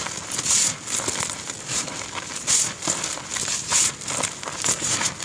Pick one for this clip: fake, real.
real